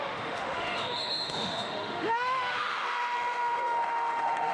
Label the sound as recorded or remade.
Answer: remade